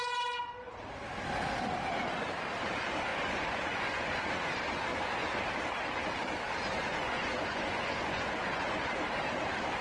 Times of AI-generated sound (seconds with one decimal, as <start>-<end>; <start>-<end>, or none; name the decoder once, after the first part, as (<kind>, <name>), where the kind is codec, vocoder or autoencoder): 3.1-4.5 (vocoder, Vocos); 4.9-5.4; 6.7-8.9